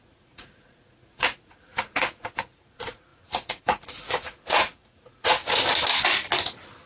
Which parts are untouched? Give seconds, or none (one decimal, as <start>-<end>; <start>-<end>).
5.4-6.9